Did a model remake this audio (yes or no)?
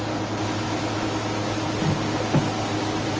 no